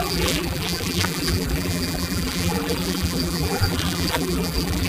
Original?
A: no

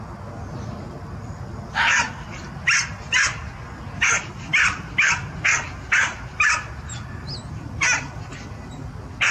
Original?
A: yes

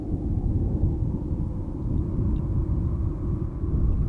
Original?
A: yes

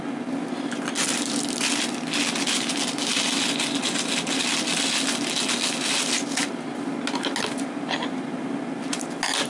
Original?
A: yes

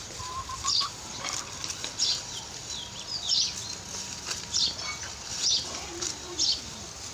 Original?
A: yes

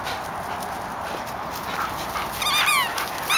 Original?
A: yes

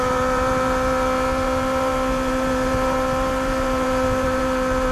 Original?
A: no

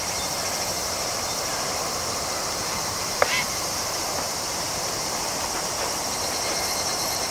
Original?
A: no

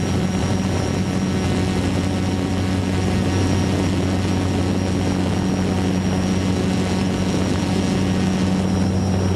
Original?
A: yes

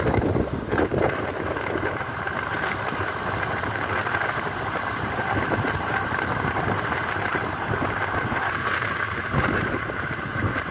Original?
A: no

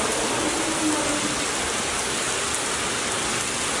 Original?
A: yes